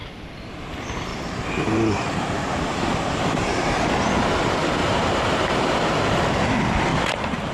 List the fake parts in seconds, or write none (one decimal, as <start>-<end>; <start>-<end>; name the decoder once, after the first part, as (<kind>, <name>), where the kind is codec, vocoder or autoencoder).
1.1-3.9 (vocoder, BigVGAN v2); 4.8-6.3; 6.9-7.5